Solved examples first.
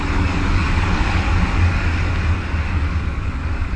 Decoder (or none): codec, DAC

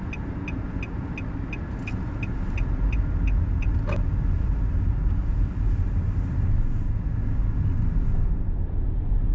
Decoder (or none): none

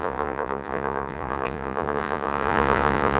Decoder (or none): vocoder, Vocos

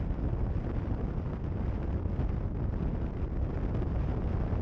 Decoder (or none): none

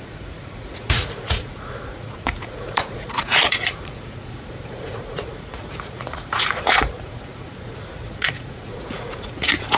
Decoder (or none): vocoder, Vocos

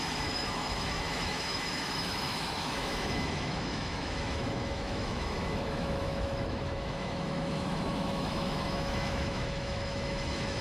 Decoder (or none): autoencoder, DAC-VAE